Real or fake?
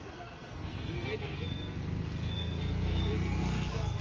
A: fake